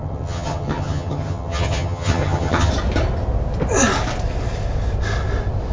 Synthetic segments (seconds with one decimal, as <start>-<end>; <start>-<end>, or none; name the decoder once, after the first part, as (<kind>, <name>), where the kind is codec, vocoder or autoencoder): 0.0-2.7 (vocoder, HiFi-GAN)